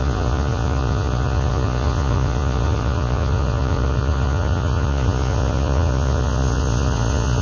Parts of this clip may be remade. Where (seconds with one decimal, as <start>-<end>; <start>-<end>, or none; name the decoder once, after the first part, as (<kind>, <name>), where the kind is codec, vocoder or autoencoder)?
0.0-7.4 (vocoder, Vocos)

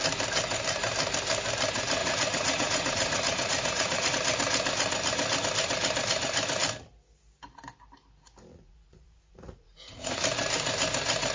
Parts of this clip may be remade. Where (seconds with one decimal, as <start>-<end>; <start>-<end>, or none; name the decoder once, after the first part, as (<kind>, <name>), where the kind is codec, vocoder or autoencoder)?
2.0-4.1 (vocoder, Vocos); 8.5-10.2